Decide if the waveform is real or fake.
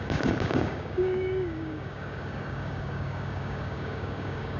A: fake